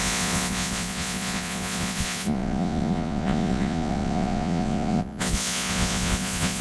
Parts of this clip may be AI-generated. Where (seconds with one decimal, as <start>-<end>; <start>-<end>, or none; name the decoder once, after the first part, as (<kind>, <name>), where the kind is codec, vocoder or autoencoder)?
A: 0.0-6.6 (vocoder, Vocos)